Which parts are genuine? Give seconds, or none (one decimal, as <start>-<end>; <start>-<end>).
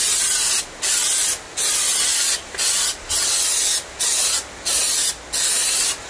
0.0-6.1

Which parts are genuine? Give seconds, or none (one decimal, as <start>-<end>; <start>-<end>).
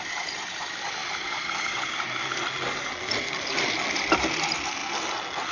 0.0-5.5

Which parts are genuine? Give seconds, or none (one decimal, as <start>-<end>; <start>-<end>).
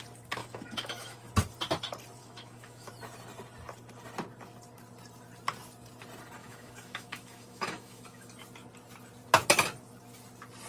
0.0-0.4; 1.3-2.2; 2.9-6.4; 8.3-10.7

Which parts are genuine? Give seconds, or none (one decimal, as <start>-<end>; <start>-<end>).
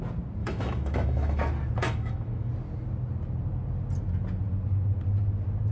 0.0-0.4; 1.4-1.8; 2.5-5.7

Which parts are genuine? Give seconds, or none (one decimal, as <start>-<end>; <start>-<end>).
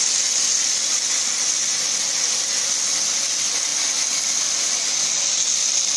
0.0-6.0